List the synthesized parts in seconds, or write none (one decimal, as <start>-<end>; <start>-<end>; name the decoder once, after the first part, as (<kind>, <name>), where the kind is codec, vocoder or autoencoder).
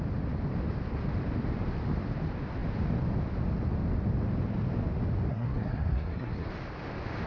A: 5.3-6.5 (codec, SNAC)